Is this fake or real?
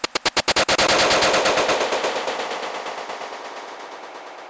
real